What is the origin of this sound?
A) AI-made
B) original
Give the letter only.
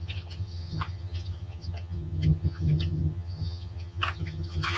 A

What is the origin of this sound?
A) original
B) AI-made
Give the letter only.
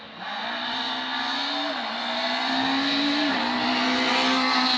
A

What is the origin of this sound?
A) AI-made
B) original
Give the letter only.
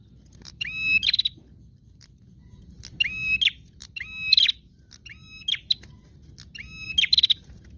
B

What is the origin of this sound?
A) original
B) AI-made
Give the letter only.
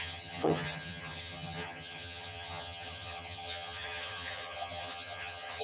B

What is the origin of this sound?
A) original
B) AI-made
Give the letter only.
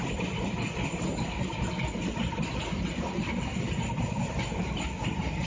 A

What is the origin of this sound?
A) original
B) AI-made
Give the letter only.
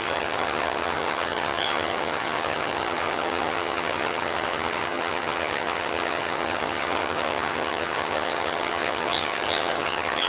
B